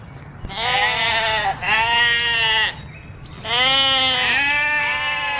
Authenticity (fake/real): real